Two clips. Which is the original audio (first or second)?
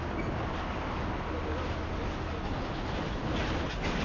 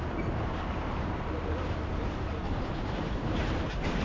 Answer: first